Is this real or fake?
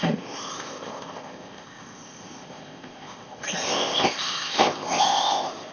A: fake